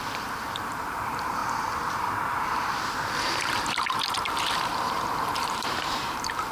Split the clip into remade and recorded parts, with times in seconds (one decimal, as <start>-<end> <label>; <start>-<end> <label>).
0.0-1.4 remade; 1.4-4.6 recorded; 4.6-6.5 remade